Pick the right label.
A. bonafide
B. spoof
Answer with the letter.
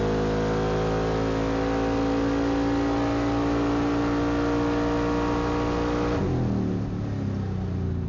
A